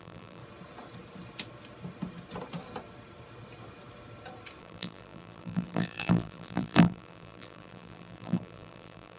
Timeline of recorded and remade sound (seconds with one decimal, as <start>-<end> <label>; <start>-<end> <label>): 0.0-0.4 remade; 0.4-4.6 recorded; 4.6-9.2 remade